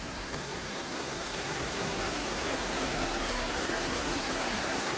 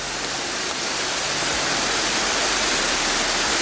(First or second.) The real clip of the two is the second